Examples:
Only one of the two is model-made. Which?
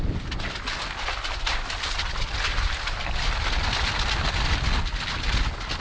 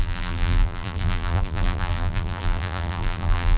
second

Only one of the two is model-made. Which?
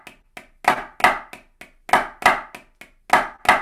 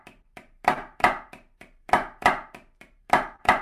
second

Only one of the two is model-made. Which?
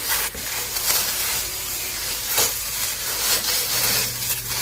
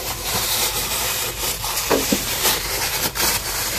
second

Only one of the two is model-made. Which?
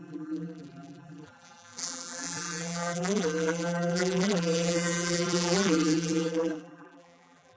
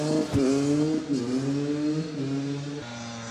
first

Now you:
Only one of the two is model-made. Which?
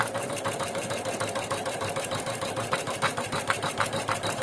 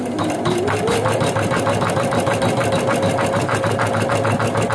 first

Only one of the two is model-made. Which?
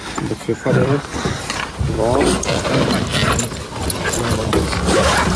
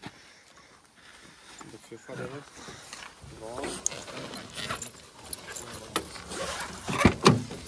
first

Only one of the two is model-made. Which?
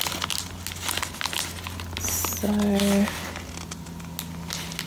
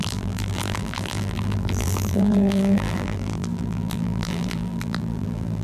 second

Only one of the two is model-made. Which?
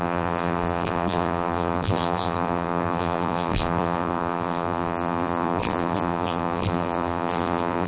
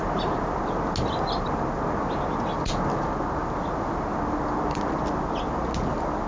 first